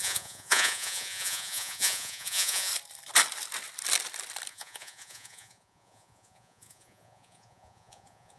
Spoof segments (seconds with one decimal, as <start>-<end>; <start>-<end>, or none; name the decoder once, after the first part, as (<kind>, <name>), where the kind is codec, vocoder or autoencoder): 0.0-2.7 (vocoder, Vocos); 4.5-8.4

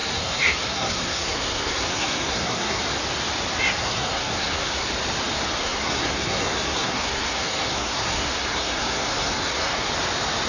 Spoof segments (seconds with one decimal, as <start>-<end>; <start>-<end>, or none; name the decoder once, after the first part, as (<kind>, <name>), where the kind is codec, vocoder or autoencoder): 0.0-2.8 (codec, SNAC); 3.8-4.9; 5.6-9.9

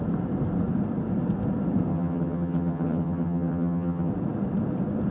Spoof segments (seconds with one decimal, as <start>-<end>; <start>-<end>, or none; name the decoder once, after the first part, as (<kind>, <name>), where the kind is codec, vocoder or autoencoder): 1.9-4.1 (vocoder, HiFi-GAN)

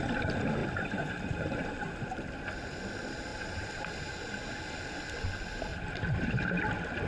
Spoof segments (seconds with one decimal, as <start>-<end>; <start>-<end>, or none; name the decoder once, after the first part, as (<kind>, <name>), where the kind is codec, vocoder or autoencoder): 0.6-2.9 (vocoder, BigVGAN v2); 3.3-3.8; 5.7-6.6

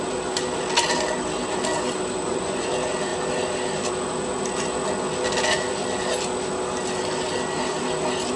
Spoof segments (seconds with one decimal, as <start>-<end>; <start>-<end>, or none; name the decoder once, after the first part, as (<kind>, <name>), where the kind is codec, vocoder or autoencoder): 2.2-2.7 (vocoder, Vocos)

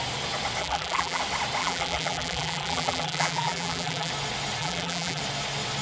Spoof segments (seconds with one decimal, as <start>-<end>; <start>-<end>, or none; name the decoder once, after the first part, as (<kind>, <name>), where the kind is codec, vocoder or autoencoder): 0.6-1.2 (vocoder, BigVGAN v2); 1.6-4.1; 4.6-5.2

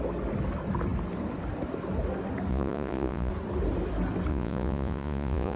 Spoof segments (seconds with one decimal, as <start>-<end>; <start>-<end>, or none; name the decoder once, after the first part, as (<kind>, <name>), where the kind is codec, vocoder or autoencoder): 2.5-3.3 (vocoder, Vocos); 4.3-5.6